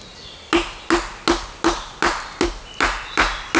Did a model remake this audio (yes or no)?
no